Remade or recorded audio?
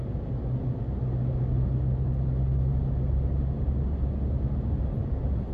recorded